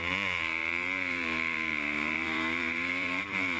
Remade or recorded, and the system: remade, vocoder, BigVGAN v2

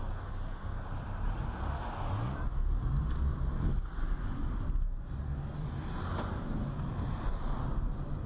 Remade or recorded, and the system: recorded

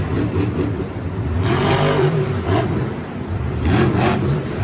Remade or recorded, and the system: remade, vocoder, BigVGAN v2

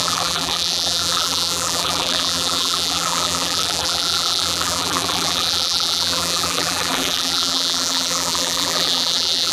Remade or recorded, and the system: remade, vocoder, BigVGAN v2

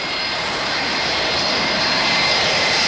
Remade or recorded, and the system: remade, vocoder, BigVGAN v2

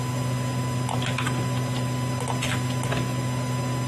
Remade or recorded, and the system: recorded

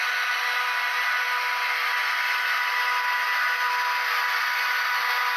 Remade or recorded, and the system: recorded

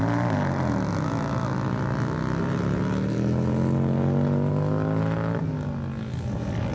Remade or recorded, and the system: recorded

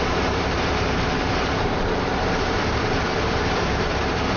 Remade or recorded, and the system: remade, vocoder, BigVGAN v2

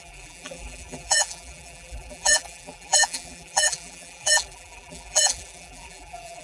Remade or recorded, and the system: remade, vocoder, BigVGAN v2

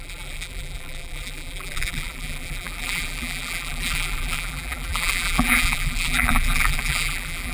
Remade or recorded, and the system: remade, vocoder, BigVGAN v2